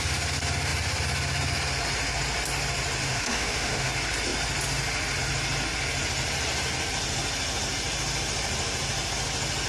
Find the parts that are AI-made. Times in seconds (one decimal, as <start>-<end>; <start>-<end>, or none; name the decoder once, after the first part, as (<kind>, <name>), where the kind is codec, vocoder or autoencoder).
3.0-3.9 (autoencoder, DAC-VAE)